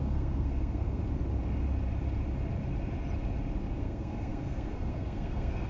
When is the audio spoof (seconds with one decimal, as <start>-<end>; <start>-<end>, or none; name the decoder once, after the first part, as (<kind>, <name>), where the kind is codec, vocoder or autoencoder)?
0.0-1.0 (codec, SNAC); 3.8-5.7